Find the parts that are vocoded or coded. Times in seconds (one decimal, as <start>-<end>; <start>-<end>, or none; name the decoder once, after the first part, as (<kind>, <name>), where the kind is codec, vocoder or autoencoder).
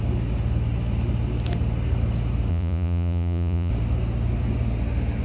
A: 2.5-3.7 (vocoder, Vocos)